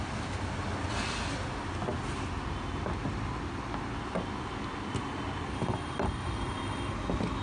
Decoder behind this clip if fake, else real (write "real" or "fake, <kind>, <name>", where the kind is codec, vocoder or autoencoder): real